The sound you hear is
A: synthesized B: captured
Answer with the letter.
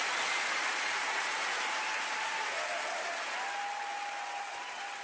B